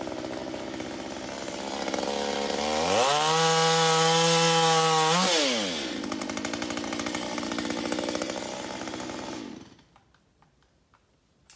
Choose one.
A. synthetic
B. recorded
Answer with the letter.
B